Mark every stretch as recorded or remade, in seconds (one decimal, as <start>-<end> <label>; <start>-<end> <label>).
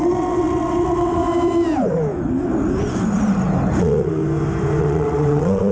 0.0-1.2 remade; 1.2-3.8 recorded; 3.8-4.2 remade; 4.2-4.8 recorded; 4.8-5.7 remade